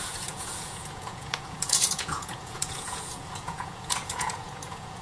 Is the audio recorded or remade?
remade